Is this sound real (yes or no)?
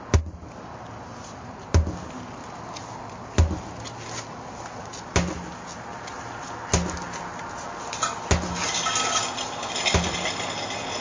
yes